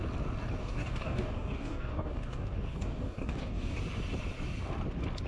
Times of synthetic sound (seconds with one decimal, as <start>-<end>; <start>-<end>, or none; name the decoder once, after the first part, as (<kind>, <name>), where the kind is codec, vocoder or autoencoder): 0.6-3.8 (codec, DAC)